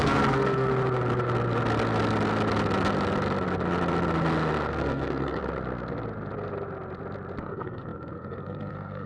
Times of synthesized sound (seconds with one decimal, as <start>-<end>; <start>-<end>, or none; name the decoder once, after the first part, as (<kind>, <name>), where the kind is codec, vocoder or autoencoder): 0.0-0.7 (codec, SNAC); 4.7-5.4; 7.4-9.1